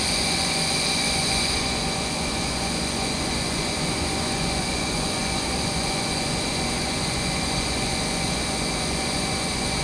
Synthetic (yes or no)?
yes